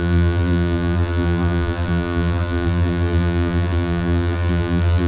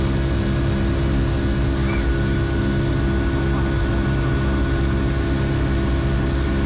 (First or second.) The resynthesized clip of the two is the first